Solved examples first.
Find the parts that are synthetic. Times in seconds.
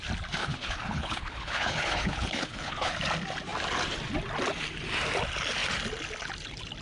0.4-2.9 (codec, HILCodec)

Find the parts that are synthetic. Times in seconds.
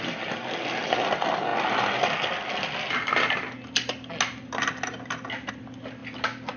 none